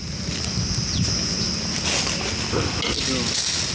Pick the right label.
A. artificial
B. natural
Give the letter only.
B